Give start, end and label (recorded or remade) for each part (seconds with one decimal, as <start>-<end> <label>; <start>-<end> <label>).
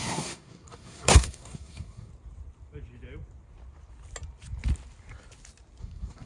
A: 0.0-2.1 remade; 2.1-5.8 recorded; 5.8-6.3 remade